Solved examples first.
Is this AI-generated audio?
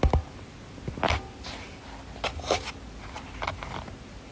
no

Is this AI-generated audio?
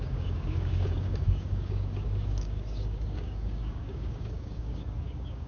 yes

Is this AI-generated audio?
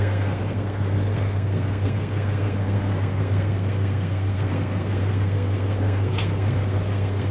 yes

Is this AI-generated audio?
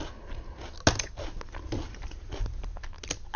no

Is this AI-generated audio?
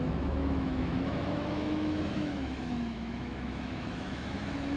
yes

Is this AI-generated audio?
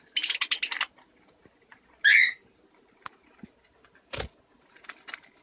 no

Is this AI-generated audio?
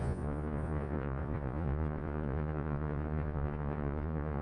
yes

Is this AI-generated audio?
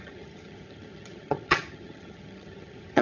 yes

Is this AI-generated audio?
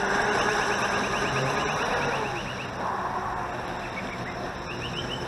no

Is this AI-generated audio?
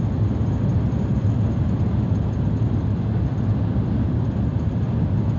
no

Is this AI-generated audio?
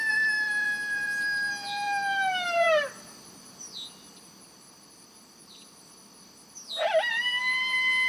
yes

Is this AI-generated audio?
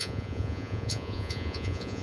yes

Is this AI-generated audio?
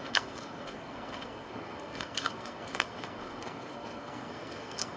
yes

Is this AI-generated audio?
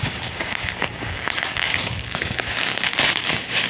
yes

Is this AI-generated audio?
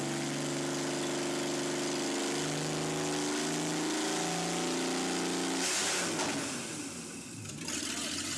no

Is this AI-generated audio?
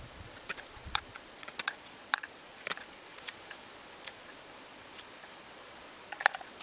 yes